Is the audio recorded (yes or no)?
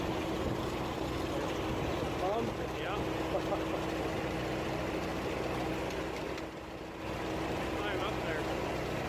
yes